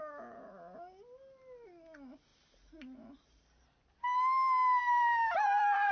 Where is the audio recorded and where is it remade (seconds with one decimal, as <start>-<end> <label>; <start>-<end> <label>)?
0.0-2.3 recorded; 2.3-5.9 remade